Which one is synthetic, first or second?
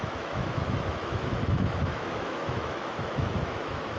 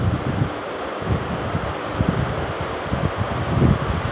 first